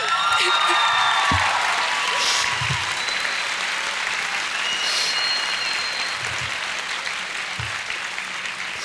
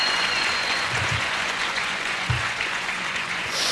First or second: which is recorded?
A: first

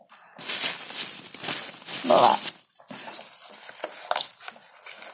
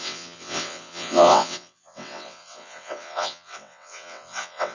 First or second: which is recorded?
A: first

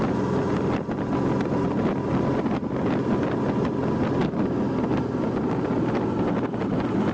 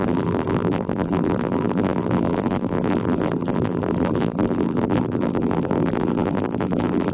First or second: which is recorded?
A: first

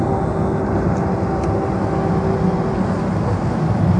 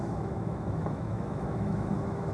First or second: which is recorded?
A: first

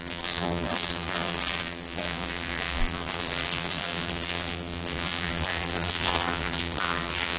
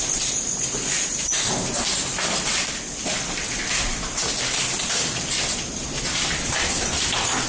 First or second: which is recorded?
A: second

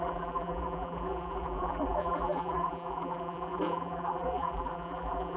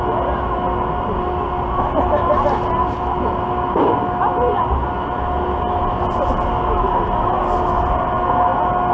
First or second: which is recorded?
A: second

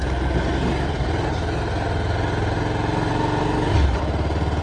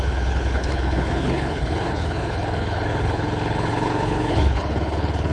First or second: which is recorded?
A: first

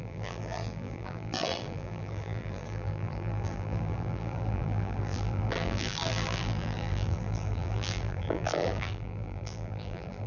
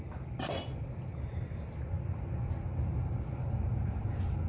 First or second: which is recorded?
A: second